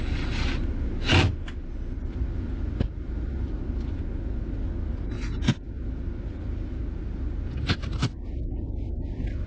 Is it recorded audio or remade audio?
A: recorded